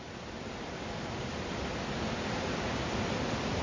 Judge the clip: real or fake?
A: real